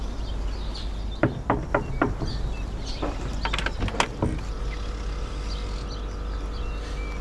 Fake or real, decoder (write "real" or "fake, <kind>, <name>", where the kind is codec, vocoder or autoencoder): real